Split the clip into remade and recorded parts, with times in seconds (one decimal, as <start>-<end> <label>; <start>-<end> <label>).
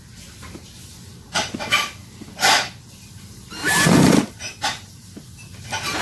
0.0-6.0 recorded